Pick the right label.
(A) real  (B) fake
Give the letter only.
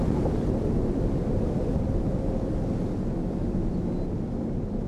A